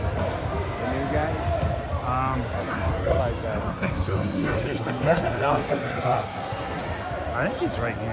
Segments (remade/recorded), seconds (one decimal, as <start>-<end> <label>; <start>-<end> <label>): 0.0-2.6 recorded; 2.6-3.2 remade; 3.2-3.7 recorded; 3.7-6.8 remade; 6.8-8.1 recorded